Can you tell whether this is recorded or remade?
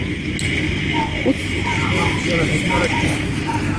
recorded